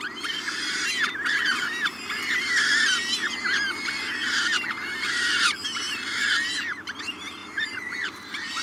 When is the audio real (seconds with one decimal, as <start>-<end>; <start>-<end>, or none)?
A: 0.0-7.4